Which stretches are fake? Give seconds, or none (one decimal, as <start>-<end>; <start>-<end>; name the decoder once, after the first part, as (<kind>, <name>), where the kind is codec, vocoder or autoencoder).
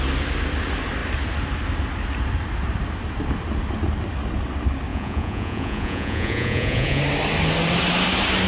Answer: 4.9-7.0 (vocoder, Vocos)